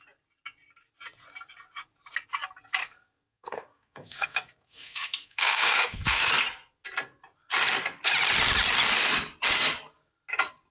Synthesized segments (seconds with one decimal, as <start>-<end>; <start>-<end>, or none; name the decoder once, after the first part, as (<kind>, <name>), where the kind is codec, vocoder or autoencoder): 2.8-6.3 (codec, SNAC)